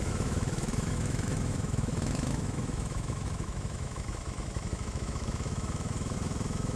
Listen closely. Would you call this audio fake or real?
fake